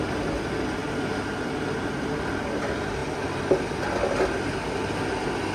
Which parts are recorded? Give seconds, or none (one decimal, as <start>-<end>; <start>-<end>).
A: 0.0-5.5